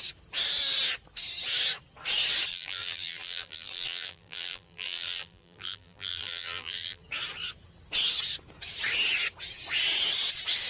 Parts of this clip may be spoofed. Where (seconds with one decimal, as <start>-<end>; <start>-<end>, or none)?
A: 2.5-7.0

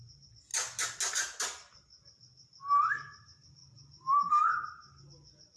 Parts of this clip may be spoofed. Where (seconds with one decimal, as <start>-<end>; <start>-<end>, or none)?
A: none

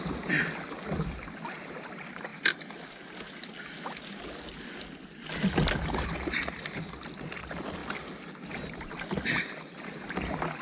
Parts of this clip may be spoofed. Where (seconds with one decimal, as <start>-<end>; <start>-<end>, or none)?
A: none

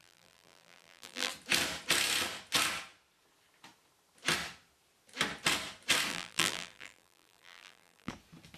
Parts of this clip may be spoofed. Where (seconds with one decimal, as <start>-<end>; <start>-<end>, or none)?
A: 0.0-1.3; 6.1-8.1